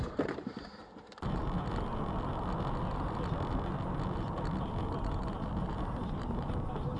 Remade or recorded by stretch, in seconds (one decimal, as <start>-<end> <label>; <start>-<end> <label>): 0.0-1.4 remade; 1.4-5.6 recorded; 5.6-7.0 remade